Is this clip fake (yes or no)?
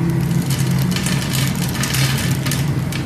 no